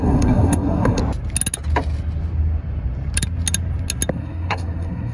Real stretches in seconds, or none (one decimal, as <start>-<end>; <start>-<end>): 1.0-4.1